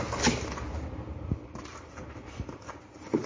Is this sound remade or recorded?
recorded